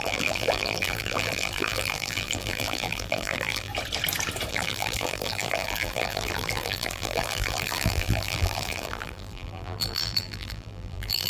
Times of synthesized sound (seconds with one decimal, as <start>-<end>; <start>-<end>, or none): 0.0-3.7; 4.5-11.3